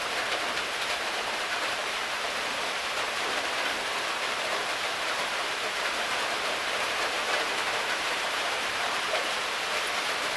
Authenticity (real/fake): fake